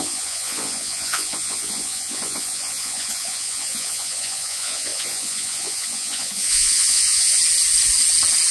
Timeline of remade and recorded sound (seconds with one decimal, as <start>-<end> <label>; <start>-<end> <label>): 0.0-7.4 remade; 7.4-8.5 recorded